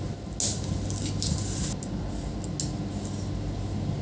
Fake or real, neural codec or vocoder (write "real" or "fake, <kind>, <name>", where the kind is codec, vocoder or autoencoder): real